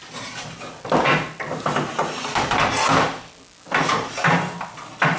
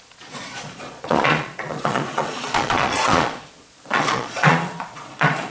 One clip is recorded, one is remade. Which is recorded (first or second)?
first